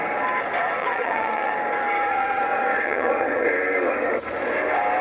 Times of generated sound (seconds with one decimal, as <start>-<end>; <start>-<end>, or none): 0.8-1.5; 2.1-3.5